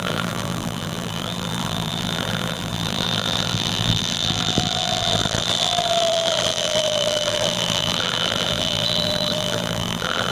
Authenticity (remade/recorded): remade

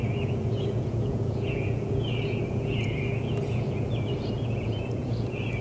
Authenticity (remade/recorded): remade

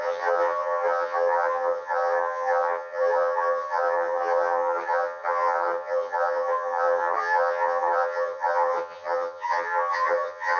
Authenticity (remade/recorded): remade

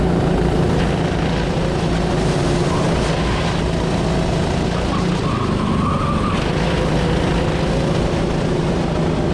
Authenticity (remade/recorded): recorded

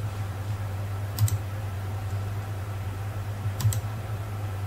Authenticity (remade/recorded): remade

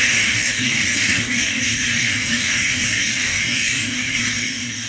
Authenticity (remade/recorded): remade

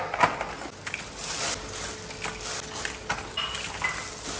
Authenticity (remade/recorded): recorded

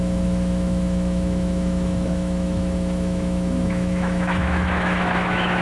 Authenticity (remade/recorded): remade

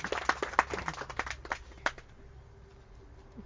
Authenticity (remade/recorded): recorded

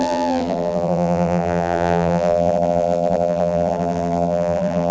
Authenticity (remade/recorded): remade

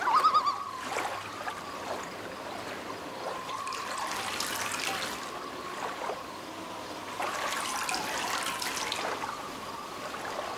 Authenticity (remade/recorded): recorded